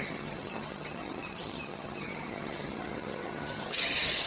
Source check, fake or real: fake